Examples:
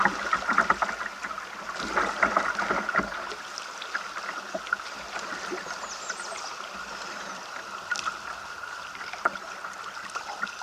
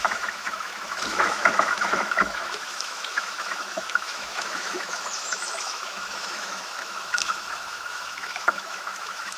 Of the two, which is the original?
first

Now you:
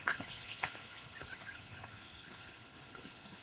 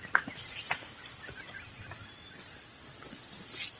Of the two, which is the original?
second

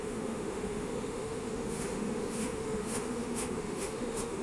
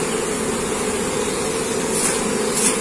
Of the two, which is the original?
second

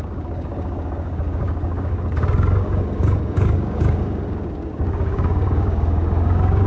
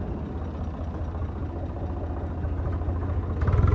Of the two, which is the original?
second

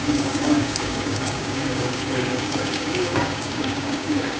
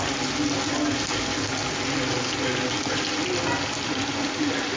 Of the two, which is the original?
second